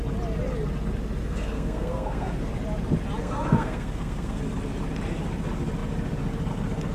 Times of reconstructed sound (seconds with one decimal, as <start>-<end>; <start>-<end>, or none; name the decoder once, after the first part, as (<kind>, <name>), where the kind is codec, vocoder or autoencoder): 1.2-2.5 (codec, SNAC); 3.2-4.4